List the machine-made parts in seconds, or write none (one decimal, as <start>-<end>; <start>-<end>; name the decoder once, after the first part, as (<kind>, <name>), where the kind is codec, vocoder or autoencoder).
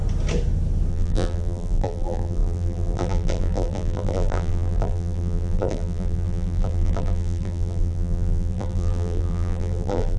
0.9-10.2 (vocoder, BigVGAN v2)